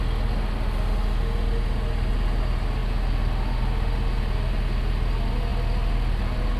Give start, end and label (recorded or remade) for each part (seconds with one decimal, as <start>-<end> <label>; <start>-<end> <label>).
0.0-6.6 recorded